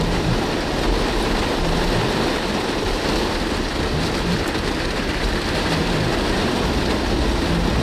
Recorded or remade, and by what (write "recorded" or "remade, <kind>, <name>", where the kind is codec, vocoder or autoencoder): remade, vocoder, BigVGAN v2